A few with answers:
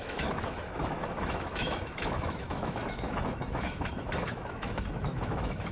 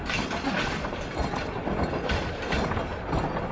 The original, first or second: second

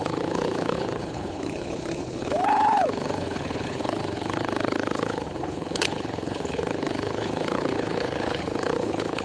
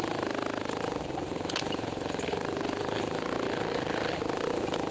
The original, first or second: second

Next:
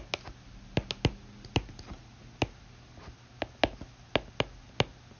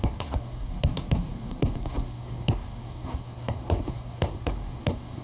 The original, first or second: first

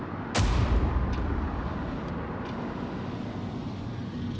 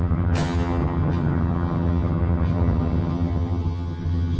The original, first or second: first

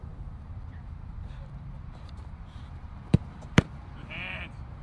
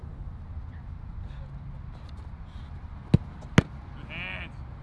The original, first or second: second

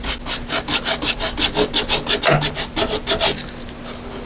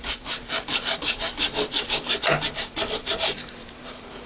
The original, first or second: first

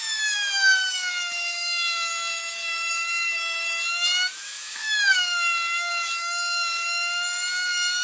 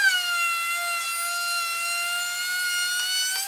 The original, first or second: second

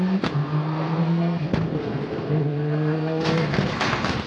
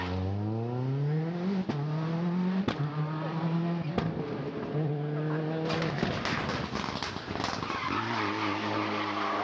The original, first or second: second